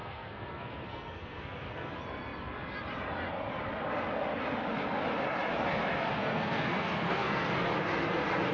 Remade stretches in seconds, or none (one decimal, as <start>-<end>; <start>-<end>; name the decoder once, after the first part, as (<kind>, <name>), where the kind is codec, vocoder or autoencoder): 0.0-1.9 (codec, SNAC); 6.2-7.5